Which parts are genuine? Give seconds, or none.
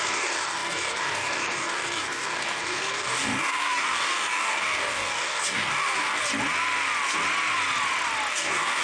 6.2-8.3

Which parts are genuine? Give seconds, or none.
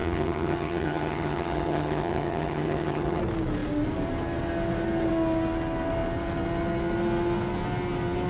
3.2-8.3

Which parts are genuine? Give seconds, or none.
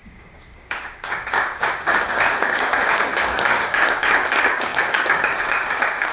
none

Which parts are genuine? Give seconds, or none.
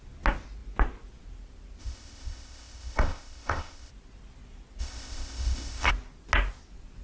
0.0-1.8; 3.9-4.8; 5.9-7.0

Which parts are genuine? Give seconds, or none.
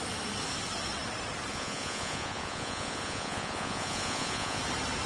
0.0-1.5; 4.6-5.1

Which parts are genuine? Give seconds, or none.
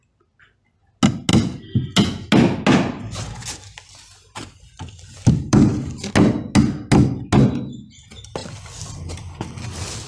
0.0-10.1